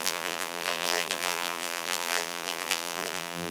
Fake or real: fake